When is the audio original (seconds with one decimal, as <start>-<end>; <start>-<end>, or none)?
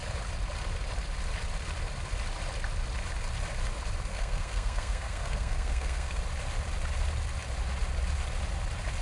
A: 0.0-4.1; 6.2-9.0